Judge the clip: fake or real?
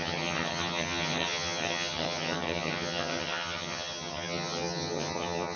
fake